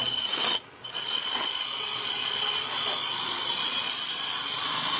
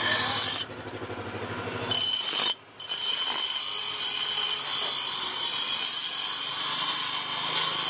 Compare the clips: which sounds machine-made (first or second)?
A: first